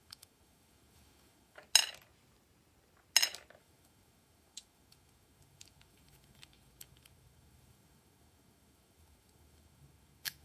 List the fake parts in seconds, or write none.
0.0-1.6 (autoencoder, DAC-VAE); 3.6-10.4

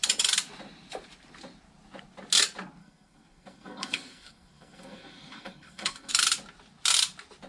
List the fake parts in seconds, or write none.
2.8-6.1 (codec, SNAC)

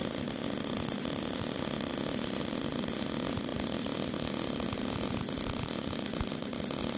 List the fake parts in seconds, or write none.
2.4-3.5 (vocoder, BigVGAN v2); 4.6-7.0

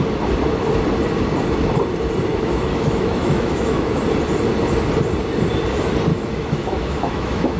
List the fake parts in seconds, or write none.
2.3-4.0 (autoencoder, DAC-VAE); 6.1-7.6